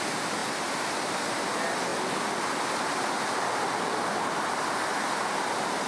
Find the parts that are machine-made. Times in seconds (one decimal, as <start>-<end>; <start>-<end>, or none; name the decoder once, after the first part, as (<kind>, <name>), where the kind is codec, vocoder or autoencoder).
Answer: none